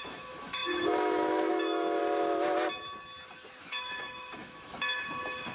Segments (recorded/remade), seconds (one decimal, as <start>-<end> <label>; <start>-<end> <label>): 0.0-2.0 remade; 2.0-3.6 recorded; 3.6-5.5 remade